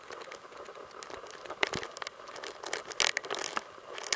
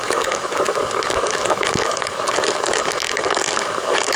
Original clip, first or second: first